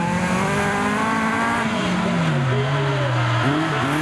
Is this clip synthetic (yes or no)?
no